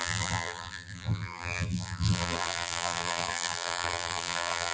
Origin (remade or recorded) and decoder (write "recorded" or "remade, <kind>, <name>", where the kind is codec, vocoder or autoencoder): remade, vocoder, BigVGAN v2